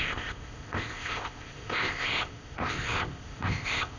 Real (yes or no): no